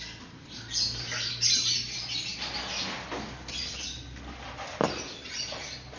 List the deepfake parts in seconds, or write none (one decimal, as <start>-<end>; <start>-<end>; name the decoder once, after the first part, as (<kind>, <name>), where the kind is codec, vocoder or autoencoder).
none

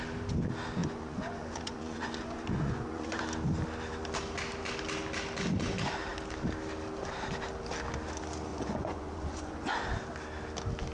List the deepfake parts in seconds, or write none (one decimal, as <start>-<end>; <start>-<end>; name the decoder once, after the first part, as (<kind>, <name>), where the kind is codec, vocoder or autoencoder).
0.8-3.2 (vocoder, Vocos); 8.5-9.8